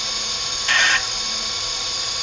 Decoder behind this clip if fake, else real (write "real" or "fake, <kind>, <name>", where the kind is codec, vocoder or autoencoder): fake, vocoder, BigVGAN v2